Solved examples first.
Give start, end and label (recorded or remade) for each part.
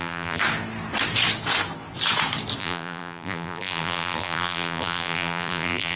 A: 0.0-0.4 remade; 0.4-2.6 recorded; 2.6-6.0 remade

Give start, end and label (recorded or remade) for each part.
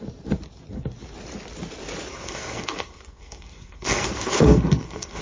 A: 0.0-2.1 recorded; 2.1-5.2 remade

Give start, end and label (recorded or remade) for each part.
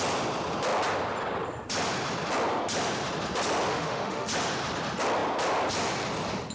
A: 0.0-3.7 recorded; 3.7-4.3 remade; 4.3-6.5 recorded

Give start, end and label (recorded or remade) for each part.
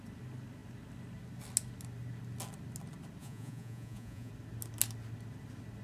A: 0.0-3.2 recorded; 3.2-4.3 remade; 4.3-5.8 recorded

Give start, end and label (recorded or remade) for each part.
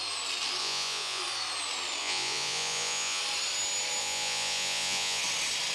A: 0.0-0.6 recorded; 0.6-1.2 remade; 1.2-2.0 recorded; 2.0-3.2 remade; 3.2-4.0 recorded; 4.0-5.2 remade; 5.2-5.7 recorded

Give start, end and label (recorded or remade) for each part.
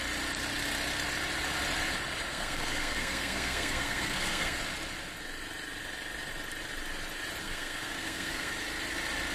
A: 0.0-2.3 recorded; 2.3-4.6 remade; 4.6-7.4 recorded; 7.4-8.5 remade; 8.5-9.3 recorded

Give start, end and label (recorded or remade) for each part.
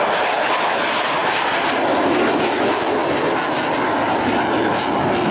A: 0.0-5.3 recorded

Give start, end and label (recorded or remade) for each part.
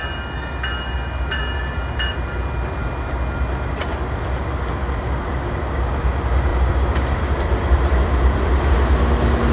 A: 0.0-6.5 recorded; 6.5-8.7 remade; 8.7-9.5 recorded